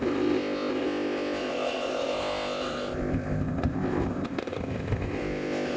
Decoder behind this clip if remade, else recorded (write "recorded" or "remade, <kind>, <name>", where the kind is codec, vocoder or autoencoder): remade, codec, ZipCodec